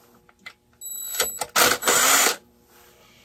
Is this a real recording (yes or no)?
yes